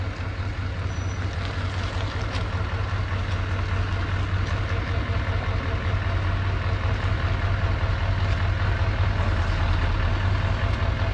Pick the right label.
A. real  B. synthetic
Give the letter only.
A